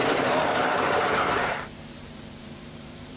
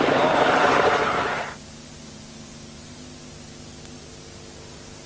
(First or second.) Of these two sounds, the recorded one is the second